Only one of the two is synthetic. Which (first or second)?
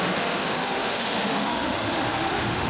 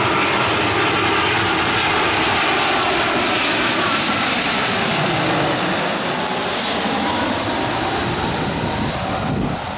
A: first